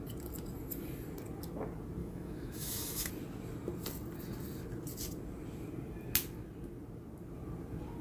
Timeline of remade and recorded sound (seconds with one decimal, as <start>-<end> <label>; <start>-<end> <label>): 0.0-2.0 recorded; 2.0-3.1 remade; 3.1-8.0 recorded